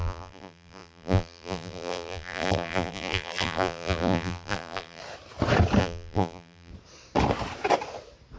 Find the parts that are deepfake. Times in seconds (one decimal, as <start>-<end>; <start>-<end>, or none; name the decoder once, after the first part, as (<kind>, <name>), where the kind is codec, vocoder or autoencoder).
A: 0.0-5.0 (vocoder, BigVGAN v2); 5.8-6.7